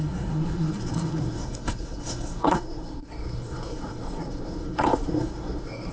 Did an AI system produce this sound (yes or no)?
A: yes